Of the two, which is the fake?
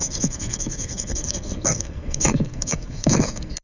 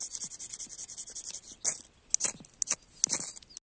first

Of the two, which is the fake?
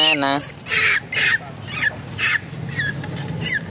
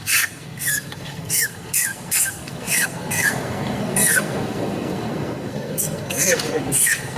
second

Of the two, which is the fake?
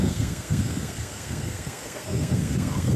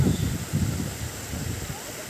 first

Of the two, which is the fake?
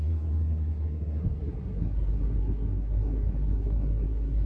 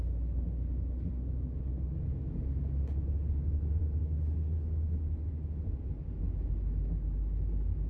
first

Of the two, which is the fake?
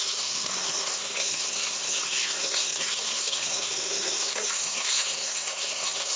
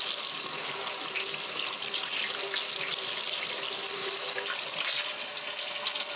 first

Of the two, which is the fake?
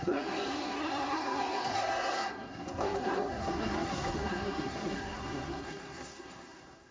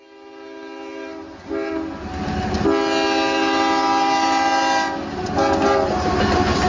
first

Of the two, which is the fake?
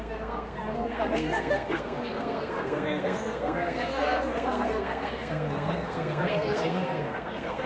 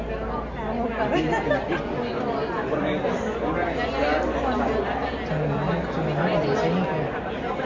first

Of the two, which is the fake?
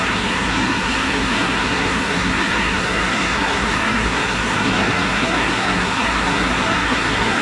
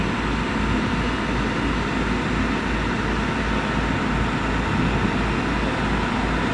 first